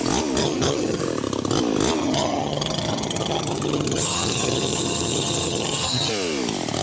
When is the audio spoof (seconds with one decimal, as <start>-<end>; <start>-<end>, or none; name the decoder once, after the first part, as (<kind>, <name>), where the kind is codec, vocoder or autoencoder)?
0.4-1.0 (vocoder, HiFi-GAN); 2.0-6.1